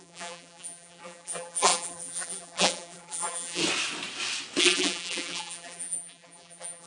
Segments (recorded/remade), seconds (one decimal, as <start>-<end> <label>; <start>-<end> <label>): 0.0-3.6 remade; 3.6-4.6 recorded; 4.6-6.9 remade